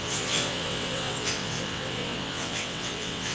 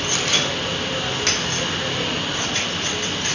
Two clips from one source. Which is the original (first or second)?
second